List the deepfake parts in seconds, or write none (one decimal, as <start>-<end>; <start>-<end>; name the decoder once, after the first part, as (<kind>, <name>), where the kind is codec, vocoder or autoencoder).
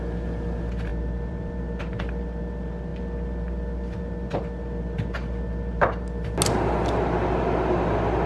none